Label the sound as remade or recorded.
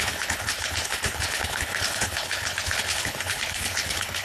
remade